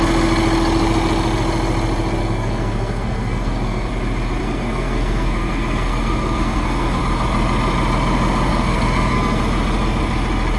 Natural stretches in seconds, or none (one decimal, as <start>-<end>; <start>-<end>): 0.0-2.2; 3.9-4.4; 7.0-8.5; 9.4-10.6

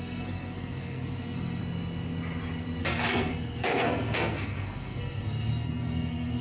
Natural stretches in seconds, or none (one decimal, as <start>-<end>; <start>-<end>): 1.6-2.8

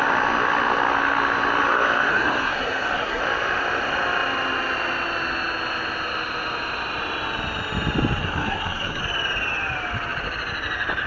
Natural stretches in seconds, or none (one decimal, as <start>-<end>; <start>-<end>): 0.0-2.1; 3.2-8.2; 9.0-11.1

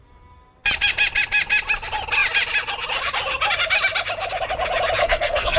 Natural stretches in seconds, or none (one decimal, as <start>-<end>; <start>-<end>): 0.0-5.0

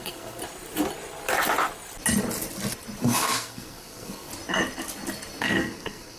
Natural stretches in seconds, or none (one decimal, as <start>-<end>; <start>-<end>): 0.4-3.0; 4.3-5.4

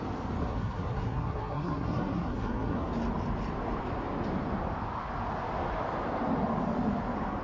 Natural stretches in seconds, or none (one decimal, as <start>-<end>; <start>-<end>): 0.0-0.4; 2.9-7.4

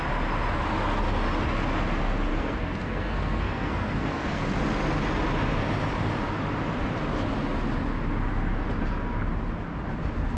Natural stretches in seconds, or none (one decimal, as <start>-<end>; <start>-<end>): 0.0-2.3; 4.4-10.4